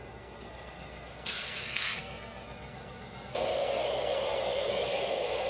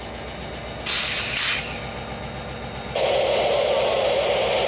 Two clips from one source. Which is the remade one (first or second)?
first